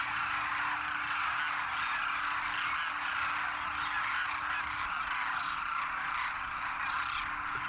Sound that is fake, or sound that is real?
real